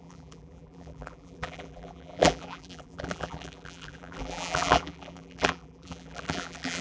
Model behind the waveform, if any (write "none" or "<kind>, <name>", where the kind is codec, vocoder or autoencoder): vocoder, BigVGAN v2